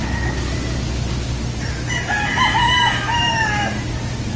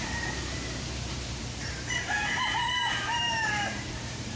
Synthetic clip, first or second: second